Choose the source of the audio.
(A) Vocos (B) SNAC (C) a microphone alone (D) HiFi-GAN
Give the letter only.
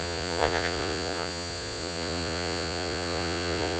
A